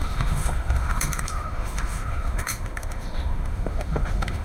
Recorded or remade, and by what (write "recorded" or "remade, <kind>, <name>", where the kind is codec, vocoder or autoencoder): remade, autoencoder, DAC-VAE